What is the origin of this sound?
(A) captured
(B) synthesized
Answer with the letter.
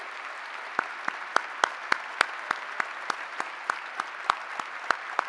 A